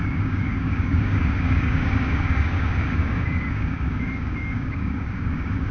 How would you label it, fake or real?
fake